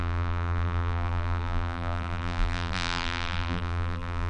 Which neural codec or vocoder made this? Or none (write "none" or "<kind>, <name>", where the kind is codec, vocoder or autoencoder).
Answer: vocoder, BigVGAN v2